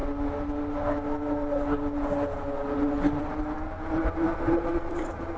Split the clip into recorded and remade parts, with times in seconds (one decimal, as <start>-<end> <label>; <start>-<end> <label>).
0.0-5.4 recorded